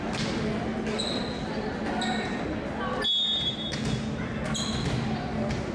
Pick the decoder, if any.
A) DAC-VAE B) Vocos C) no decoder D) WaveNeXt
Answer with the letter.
C